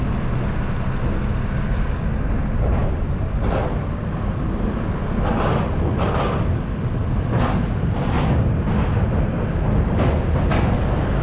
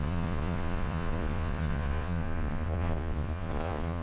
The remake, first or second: second